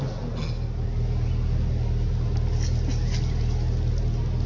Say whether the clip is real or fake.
real